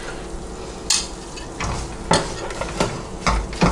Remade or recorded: recorded